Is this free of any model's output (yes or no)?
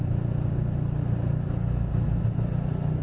yes